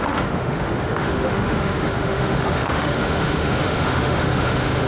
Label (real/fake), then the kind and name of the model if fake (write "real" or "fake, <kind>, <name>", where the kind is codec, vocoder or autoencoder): fake, autoencoder, DAC-VAE